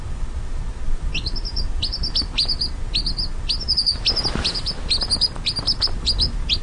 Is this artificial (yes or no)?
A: no